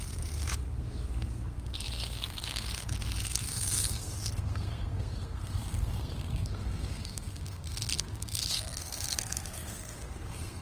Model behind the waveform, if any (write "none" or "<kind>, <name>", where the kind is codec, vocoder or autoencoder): codec, SNAC